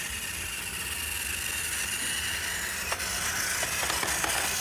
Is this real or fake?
real